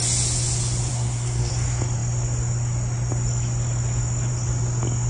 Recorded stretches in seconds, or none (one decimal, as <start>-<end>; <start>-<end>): 0.0-0.9; 1.5-5.1